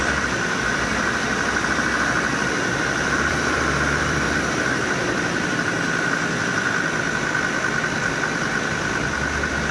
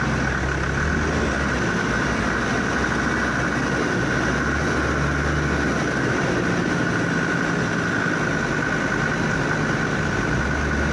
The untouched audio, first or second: second